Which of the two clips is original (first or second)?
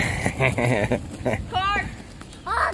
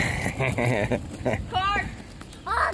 first